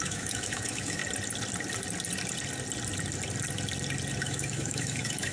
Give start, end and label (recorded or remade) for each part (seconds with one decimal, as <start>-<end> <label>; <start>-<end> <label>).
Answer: 0.0-1.0 remade; 1.0-4.2 recorded; 4.2-5.3 remade